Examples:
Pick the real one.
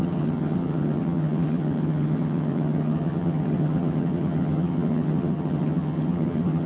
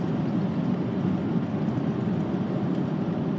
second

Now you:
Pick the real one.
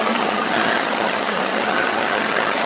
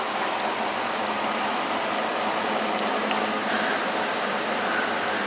second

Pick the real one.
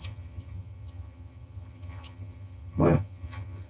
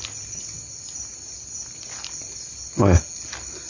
second